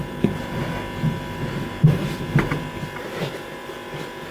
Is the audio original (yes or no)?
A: yes